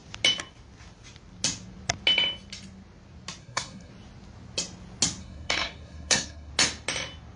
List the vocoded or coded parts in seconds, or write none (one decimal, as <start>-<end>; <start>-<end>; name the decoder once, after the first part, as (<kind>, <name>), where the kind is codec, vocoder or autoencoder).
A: 3.4-3.9 (codec, SNAC); 5.2-6.5